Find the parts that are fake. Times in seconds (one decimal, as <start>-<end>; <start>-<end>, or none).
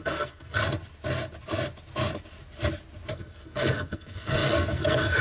0.0-0.6; 3.1-5.2